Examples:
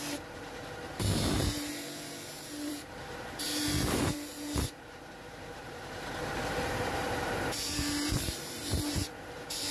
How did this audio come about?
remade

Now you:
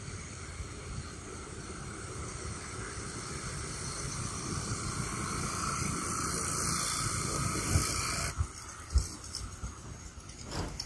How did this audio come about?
remade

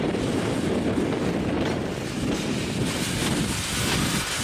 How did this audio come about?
recorded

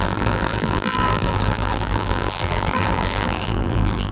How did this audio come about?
remade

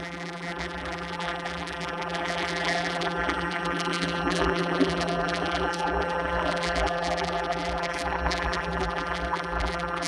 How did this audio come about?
remade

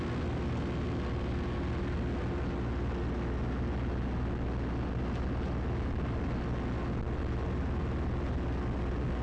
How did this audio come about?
recorded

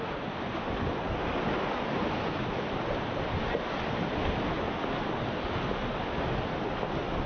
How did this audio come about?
recorded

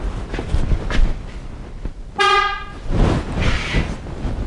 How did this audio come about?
recorded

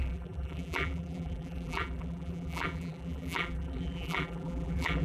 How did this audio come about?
remade